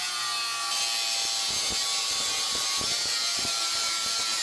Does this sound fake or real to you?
real